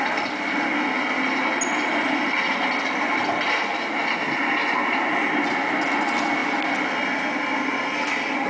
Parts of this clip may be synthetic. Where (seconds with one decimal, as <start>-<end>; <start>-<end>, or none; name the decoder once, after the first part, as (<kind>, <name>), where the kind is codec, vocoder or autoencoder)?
none